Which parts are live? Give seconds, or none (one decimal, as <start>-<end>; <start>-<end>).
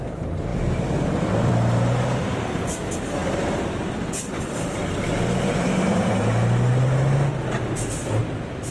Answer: 0.0-0.5; 1.5-3.2; 6.2-8.7